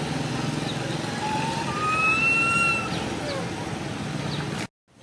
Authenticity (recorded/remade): recorded